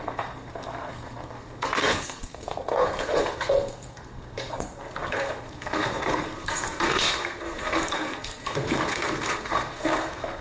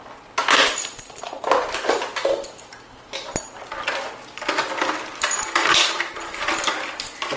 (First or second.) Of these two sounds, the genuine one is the second